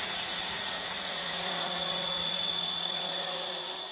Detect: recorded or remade remade